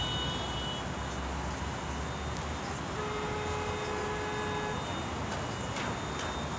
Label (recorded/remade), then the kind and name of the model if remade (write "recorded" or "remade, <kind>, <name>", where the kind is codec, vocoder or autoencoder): recorded